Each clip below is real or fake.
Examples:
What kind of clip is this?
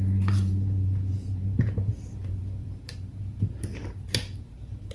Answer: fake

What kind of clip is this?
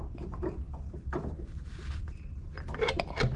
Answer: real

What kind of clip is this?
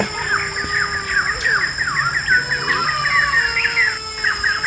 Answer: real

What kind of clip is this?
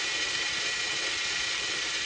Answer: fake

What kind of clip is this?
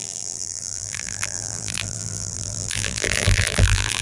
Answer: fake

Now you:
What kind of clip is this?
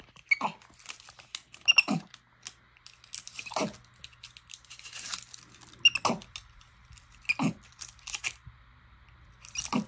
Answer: real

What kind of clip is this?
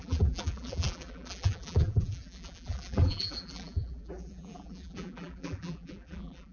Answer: fake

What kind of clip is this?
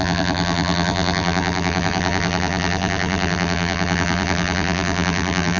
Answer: fake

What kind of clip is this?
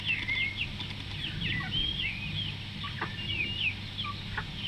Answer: real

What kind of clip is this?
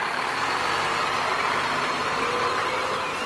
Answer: real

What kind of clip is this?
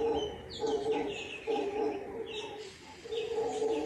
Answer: real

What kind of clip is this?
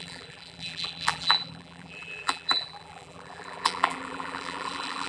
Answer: fake